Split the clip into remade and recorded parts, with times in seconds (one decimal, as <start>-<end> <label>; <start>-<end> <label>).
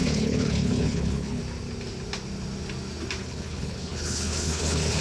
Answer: 0.0-1.4 remade; 1.4-3.2 recorded; 3.2-5.0 remade